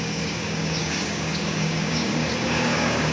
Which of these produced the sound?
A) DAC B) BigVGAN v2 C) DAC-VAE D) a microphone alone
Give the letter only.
A